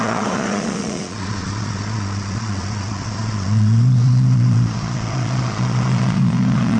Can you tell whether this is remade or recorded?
remade